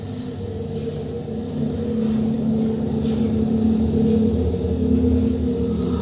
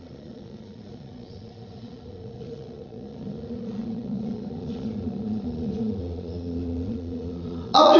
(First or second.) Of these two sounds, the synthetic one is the second